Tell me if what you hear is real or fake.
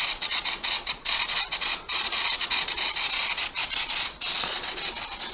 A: fake